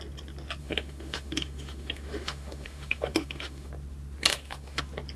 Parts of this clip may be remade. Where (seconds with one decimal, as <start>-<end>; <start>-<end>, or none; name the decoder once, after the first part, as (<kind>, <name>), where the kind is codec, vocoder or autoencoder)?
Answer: 0.6-3.7 (autoencoder, DAC-VAE); 4.3-4.8